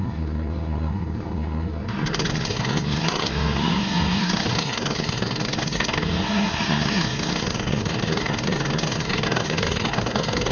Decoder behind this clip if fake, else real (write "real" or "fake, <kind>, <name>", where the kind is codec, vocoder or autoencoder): fake, codec, SNAC